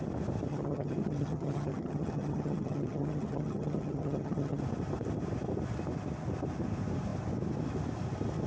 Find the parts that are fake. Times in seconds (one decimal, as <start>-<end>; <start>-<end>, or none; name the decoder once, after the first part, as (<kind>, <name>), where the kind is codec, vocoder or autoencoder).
0.5-4.6 (vocoder, HiFi-GAN)